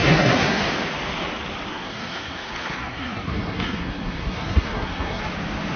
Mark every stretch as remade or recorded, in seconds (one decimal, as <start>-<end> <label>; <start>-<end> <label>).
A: 0.0-0.6 remade; 0.6-1.7 recorded; 1.7-5.2 remade; 5.2-5.8 recorded